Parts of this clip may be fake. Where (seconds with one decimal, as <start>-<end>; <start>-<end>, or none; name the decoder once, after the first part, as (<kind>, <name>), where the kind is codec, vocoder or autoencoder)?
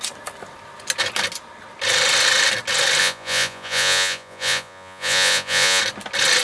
3.0-5.8 (vocoder, Vocos)